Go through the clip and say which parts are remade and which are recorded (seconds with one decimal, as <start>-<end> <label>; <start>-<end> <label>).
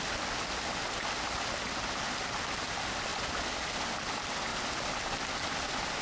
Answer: 0.0-6.0 recorded